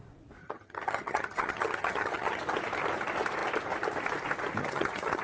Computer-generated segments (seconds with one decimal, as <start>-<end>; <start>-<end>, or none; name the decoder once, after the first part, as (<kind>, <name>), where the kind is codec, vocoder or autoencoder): 0.4-2.4 (vocoder, HiFi-GAN); 4.6-5.2